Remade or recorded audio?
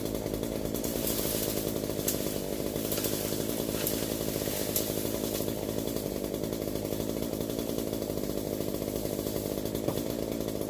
recorded